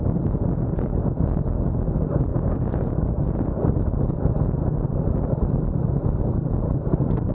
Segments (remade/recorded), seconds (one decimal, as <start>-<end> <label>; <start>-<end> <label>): 0.0-2.3 recorded; 2.3-2.9 remade; 2.9-7.3 recorded